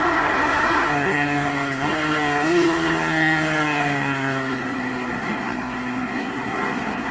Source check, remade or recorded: remade